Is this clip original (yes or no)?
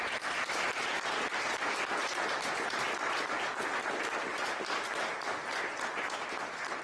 yes